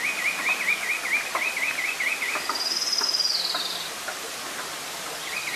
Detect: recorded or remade recorded